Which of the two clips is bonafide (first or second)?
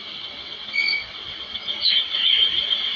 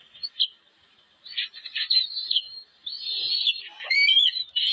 second